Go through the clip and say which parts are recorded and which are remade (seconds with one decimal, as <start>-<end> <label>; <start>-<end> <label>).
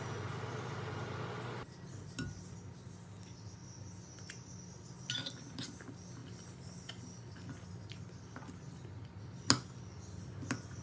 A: 0.0-10.8 recorded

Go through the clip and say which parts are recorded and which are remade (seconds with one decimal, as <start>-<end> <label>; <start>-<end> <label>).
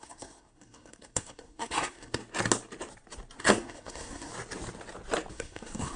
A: 0.0-2.2 remade; 2.2-3.4 recorded; 3.4-4.3 remade; 4.3-5.3 recorded; 5.3-6.0 remade